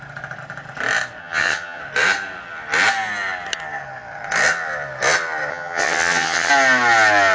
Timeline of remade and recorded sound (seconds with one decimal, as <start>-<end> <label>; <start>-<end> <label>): 0.0-1.2 recorded; 1.2-1.8 remade; 1.8-5.5 recorded; 5.5-6.5 remade; 6.5-7.3 recorded